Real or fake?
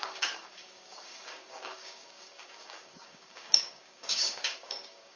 fake